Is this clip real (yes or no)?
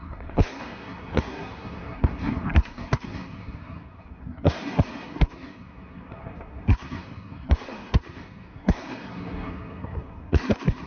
no